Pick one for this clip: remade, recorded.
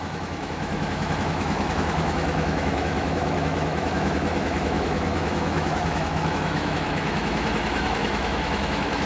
remade